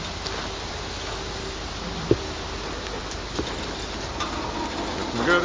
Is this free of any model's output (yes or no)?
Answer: yes